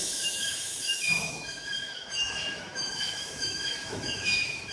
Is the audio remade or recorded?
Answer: remade